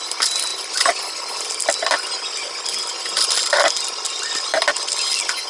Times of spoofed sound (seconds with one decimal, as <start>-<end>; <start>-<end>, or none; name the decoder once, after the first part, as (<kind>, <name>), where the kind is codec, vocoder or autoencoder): none